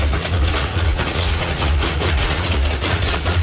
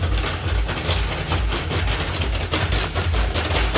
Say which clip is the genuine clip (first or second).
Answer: second